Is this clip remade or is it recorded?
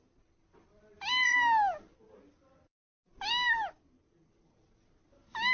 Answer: recorded